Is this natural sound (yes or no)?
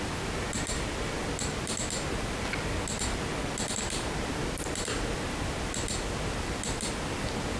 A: yes